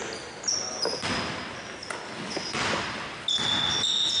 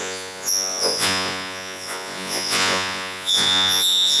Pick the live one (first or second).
first